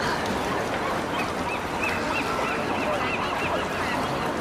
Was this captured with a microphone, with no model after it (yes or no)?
yes